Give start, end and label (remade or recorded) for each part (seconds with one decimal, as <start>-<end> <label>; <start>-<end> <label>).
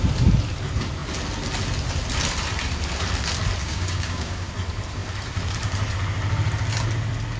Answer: 0.0-3.6 recorded; 3.6-4.5 remade; 4.5-7.4 recorded